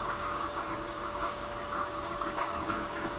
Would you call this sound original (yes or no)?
no